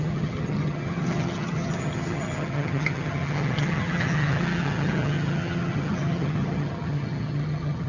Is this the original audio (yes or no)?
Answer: no